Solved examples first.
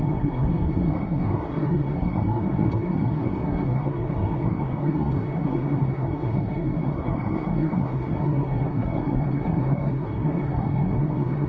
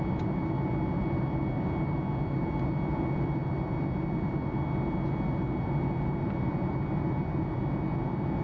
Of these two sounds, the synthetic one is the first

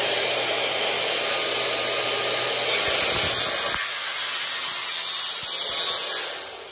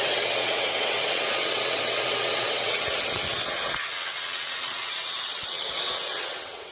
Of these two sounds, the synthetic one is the second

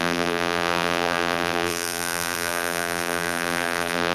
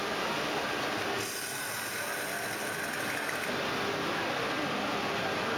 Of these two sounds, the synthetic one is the first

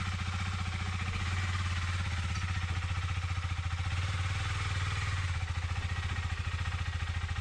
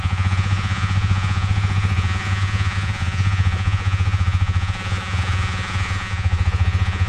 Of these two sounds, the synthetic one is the second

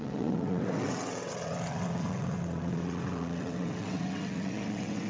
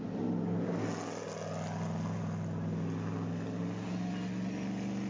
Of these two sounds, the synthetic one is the first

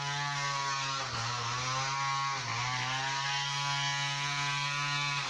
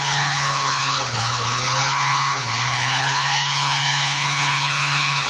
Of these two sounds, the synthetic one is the second